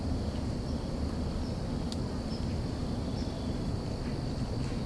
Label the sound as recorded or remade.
recorded